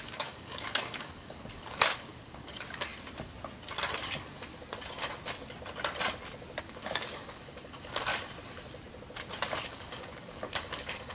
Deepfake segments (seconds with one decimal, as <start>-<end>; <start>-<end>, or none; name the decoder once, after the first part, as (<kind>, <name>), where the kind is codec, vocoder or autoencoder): 0.0-2.9 (codec, DAC); 6.6-8.1; 9.6-11.1